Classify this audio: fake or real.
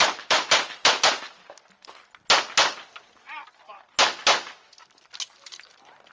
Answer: real